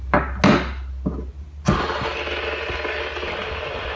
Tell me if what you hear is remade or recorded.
recorded